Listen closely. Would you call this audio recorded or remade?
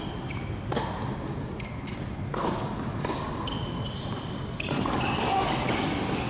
recorded